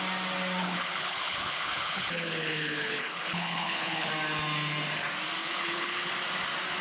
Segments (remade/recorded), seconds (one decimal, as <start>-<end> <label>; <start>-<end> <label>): 0.0-0.6 recorded; 0.6-4.1 remade; 4.1-5.4 recorded; 5.4-6.1 remade; 6.1-6.8 recorded